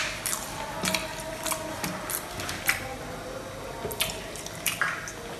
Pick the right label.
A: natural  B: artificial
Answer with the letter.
A